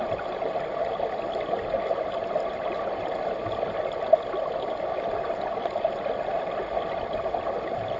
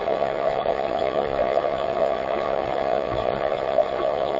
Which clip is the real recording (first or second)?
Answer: first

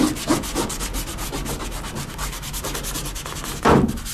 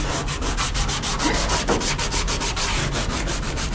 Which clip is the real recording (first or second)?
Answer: first